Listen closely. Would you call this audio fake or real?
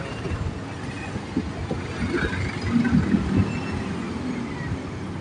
real